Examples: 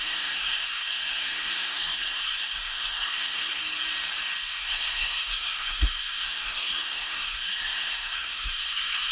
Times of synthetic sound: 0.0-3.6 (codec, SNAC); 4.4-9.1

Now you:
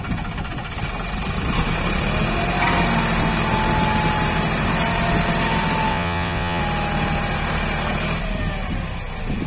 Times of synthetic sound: 5.9-6.6 (vocoder, WaveNeXt)